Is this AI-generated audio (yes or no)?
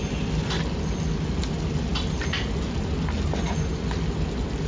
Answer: no